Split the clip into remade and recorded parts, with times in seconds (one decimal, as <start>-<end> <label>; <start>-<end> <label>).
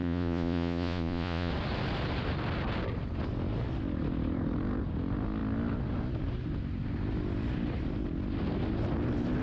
0.0-1.5 remade; 1.5-9.4 recorded